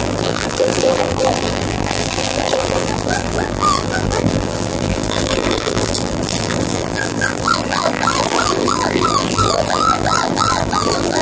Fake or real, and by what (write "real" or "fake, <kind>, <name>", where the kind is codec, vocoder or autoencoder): fake, vocoder, BigVGAN v2